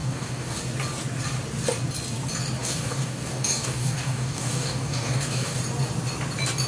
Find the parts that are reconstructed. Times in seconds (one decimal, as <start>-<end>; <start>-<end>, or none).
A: 0.0-0.6; 2.6-5.6